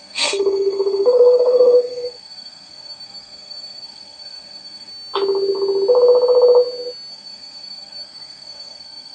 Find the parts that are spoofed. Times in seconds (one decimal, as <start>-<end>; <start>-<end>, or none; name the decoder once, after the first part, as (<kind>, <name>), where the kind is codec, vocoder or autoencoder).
0.0-4.9 (codec, SNAC); 7.1-9.1